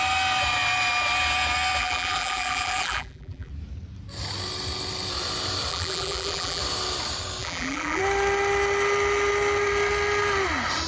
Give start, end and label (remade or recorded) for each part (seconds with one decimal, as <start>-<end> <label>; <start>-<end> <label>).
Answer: 0.0-1.8 recorded; 1.8-3.5 remade; 3.5-5.7 recorded; 5.7-6.6 remade; 6.6-7.4 recorded; 7.4-8.0 remade; 8.0-10.9 recorded